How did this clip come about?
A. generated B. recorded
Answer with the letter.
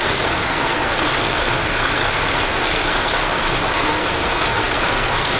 A